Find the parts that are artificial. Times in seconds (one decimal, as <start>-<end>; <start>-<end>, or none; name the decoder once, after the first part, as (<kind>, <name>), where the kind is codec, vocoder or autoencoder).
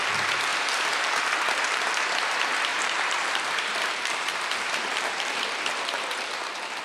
0.5-2.1 (vocoder, BigVGAN v2); 2.7-6.8